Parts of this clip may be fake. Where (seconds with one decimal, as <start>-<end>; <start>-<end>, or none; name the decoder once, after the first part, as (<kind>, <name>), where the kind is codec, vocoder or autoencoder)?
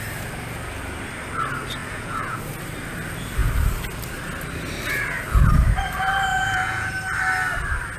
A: 1.8-2.4 (vocoder, Vocos); 6.3-6.9